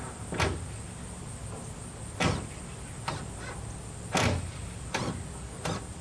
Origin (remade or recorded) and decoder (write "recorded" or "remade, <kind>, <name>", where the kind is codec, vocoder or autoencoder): recorded